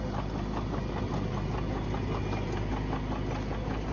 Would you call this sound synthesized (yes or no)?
no